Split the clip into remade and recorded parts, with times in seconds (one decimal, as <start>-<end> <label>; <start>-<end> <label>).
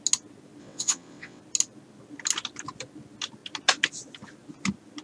0.0-0.6 recorded; 0.6-1.4 remade; 1.4-5.0 recorded